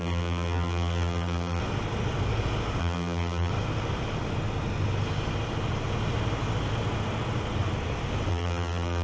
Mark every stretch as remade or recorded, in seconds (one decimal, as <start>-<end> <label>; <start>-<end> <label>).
0.0-1.6 remade; 1.6-2.8 recorded; 2.8-3.5 remade; 3.5-8.3 recorded; 8.3-9.0 remade